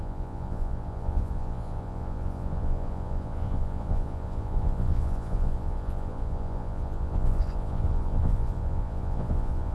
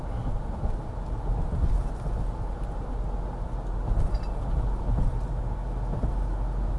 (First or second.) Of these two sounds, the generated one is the first